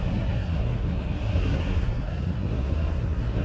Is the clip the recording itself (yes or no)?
no